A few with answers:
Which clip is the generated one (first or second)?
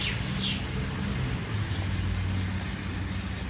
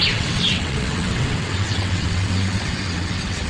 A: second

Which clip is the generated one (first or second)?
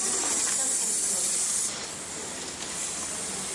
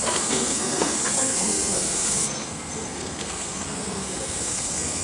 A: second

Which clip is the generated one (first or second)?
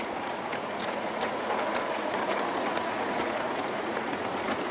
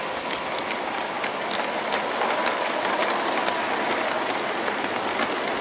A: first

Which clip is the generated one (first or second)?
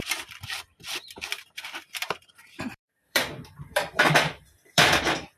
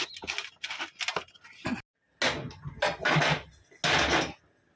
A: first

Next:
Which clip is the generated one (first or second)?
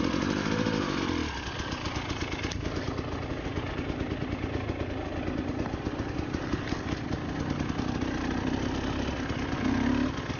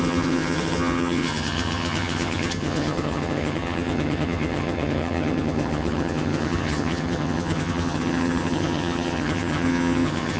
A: second